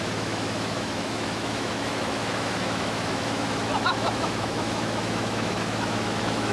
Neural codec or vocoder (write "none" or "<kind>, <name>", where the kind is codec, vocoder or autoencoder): autoencoder, DAC-VAE